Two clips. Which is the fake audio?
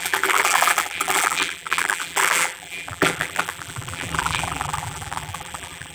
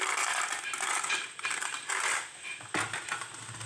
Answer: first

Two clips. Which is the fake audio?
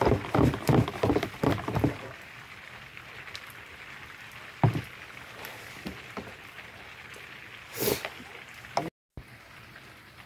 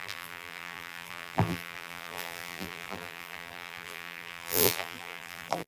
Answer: second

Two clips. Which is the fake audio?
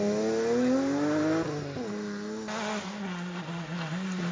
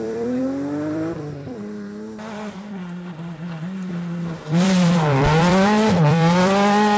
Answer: second